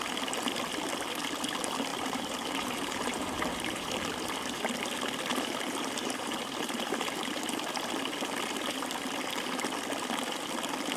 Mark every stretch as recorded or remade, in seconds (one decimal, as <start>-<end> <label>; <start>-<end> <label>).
0.0-1.9 recorded; 1.9-3.9 remade; 3.9-5.3 recorded; 5.3-7.4 remade; 7.4-11.0 recorded